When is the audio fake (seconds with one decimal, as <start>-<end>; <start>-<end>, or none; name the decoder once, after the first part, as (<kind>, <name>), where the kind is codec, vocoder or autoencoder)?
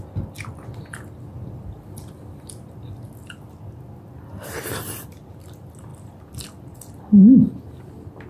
none